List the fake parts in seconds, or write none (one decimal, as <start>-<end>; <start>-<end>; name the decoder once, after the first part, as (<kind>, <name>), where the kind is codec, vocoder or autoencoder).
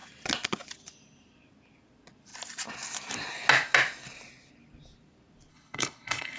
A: 5.5-6.4 (codec, HILCodec)